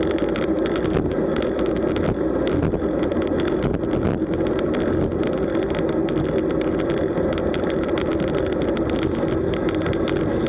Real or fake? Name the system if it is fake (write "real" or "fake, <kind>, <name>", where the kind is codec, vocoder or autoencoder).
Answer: real